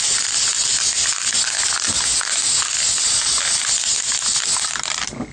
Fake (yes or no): no